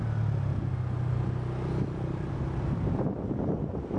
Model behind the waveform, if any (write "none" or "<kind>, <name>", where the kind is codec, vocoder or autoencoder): none